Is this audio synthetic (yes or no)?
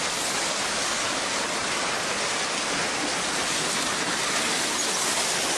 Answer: no